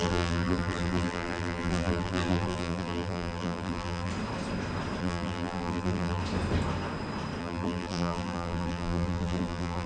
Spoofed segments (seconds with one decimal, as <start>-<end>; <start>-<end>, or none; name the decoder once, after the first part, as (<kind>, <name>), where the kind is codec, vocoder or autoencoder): 0.0-4.1 (vocoder, BigVGAN v2); 5.0-6.2; 7.4-9.9